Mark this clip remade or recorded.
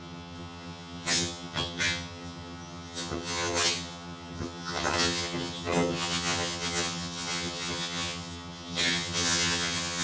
remade